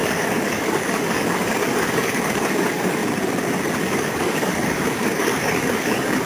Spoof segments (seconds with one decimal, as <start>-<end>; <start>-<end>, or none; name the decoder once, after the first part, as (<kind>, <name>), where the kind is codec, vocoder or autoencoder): 0.0-3.0 (codec, DAC); 3.8-6.3